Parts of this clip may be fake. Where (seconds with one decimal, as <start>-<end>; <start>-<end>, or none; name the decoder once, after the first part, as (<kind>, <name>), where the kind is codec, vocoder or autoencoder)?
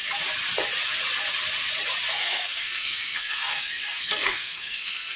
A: 2.1-5.2 (codec, SNAC)